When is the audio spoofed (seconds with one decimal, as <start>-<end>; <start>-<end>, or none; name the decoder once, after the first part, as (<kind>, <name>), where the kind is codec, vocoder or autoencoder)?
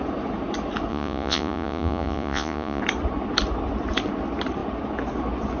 0.9-2.8 (vocoder, Vocos)